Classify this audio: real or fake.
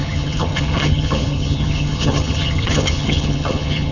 fake